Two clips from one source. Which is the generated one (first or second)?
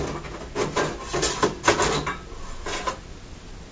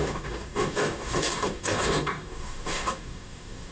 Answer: second